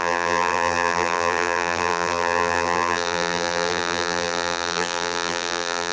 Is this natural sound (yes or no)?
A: no